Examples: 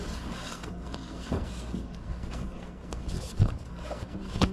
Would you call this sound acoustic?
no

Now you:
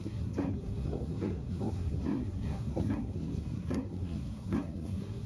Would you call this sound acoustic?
no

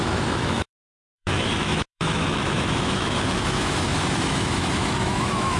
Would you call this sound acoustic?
no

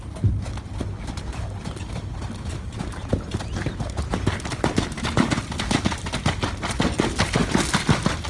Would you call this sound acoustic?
yes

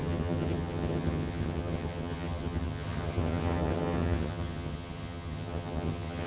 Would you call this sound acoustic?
no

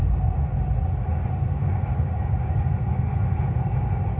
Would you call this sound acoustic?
yes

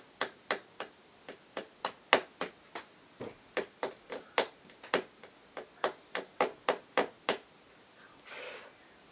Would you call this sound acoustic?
yes